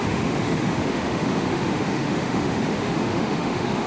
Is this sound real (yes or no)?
no